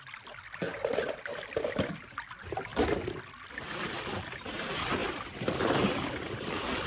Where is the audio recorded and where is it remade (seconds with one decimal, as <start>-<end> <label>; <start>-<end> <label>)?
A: 0.0-0.6 recorded; 0.6-1.9 remade; 1.9-2.7 recorded; 2.7-3.3 remade; 3.3-5.0 recorded; 5.0-5.7 remade; 5.7-6.9 recorded